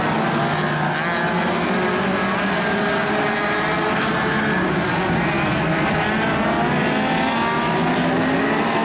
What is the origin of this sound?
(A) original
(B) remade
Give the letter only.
A